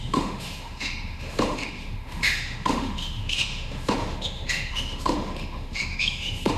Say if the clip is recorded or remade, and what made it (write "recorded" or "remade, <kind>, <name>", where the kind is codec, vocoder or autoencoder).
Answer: remade, autoencoder, DAC-VAE